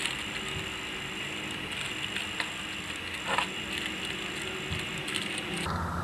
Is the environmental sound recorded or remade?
recorded